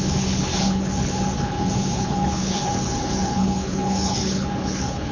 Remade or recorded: remade